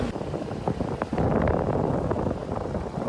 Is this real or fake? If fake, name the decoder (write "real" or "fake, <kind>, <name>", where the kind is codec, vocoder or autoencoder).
real